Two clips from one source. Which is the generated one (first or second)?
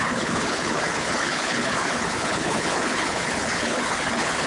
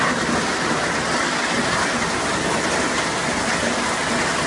first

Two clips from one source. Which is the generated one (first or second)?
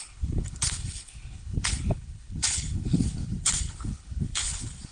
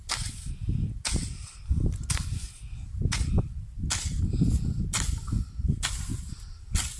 first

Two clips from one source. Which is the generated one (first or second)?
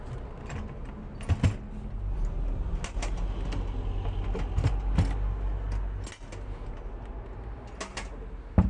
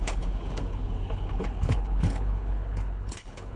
second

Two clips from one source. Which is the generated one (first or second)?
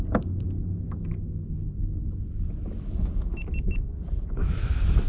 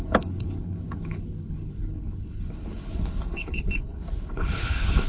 second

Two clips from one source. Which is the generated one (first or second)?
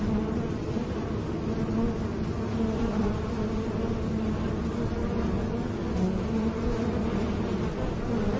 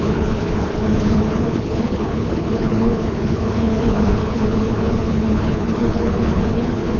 second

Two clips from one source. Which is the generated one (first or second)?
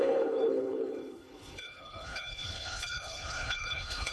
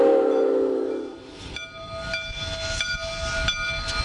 first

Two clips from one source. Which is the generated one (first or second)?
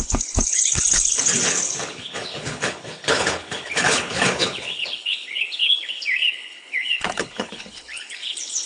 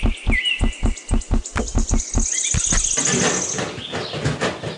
first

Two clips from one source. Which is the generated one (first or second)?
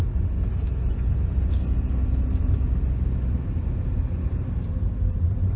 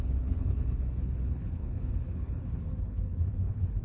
second